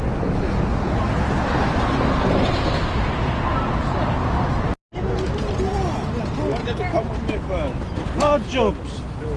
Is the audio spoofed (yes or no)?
no